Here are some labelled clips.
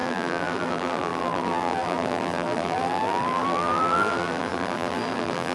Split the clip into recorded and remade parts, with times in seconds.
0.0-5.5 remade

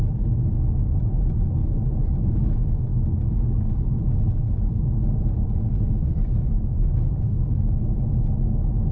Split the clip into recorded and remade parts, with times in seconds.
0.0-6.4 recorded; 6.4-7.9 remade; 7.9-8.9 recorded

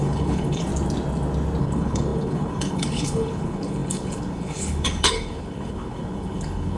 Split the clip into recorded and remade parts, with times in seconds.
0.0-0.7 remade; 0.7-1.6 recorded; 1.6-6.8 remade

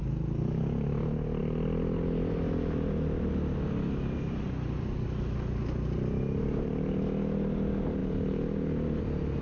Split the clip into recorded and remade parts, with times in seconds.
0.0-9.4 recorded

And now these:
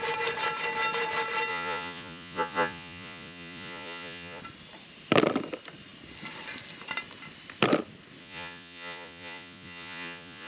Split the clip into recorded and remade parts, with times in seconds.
0.0-1.5 recorded; 1.5-4.4 remade; 4.4-8.2 recorded; 8.2-10.5 remade

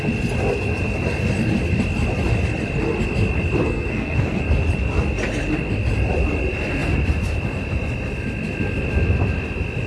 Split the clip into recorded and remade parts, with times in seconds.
0.0-3.6 recorded; 3.6-4.4 remade; 4.4-9.9 recorded